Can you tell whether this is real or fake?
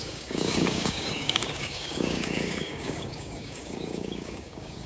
fake